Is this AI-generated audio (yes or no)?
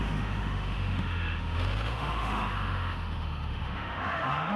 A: yes